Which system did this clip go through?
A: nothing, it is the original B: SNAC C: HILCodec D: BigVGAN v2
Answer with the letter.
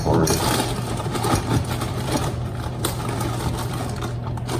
D